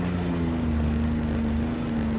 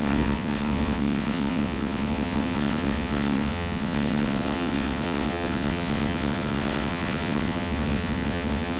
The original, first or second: first